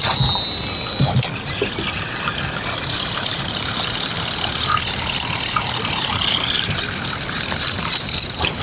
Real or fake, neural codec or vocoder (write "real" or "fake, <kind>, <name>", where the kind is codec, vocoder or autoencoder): real